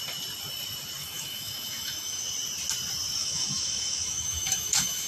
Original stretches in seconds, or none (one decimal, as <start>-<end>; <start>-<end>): 0.0-1.0; 2.2-3.2